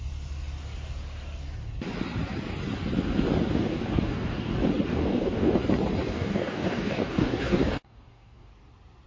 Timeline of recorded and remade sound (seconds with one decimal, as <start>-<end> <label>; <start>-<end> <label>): 0.0-3.5 recorded; 3.5-4.5 remade; 4.5-4.9 recorded; 4.9-5.5 remade; 5.5-6.1 recorded; 6.1-8.5 remade; 8.5-9.1 recorded